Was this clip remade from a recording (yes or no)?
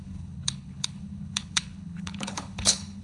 yes